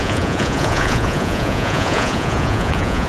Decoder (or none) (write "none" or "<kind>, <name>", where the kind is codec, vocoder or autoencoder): vocoder, Vocos